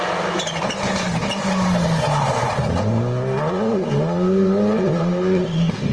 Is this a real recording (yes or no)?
yes